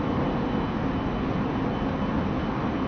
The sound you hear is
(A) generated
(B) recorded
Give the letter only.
B